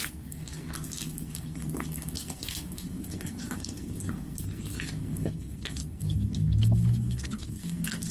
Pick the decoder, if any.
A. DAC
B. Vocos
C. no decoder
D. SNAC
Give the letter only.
D